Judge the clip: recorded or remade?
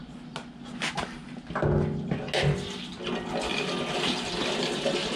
recorded